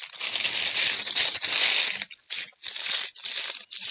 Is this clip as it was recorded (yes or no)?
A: yes